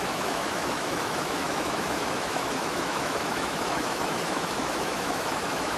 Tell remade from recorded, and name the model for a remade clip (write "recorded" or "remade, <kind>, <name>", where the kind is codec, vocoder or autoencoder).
remade, autoencoder, DAC-VAE